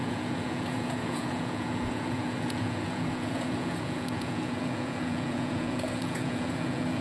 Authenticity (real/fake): fake